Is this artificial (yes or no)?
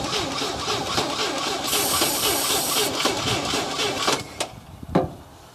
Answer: no